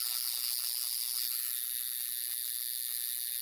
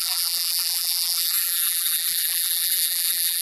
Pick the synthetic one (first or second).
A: second